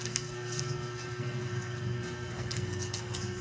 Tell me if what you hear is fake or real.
fake